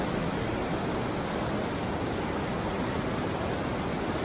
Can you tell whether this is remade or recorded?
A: recorded